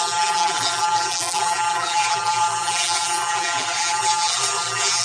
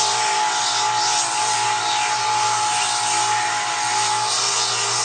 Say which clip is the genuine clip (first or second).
second